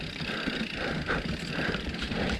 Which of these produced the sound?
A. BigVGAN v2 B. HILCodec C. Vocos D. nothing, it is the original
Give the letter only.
D